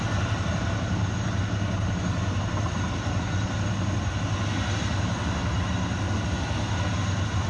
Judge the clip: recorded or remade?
recorded